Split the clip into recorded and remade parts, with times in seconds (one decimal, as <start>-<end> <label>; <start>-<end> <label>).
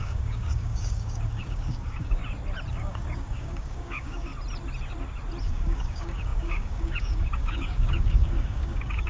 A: 0.0-2.2 remade; 2.2-2.7 recorded; 2.7-4.3 remade; 4.3-5.4 recorded; 5.4-9.1 remade